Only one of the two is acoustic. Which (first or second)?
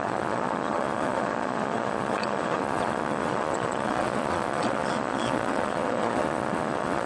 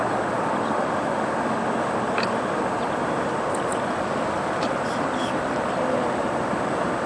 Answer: second